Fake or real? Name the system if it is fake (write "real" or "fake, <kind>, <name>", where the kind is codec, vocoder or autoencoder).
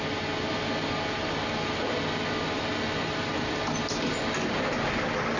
real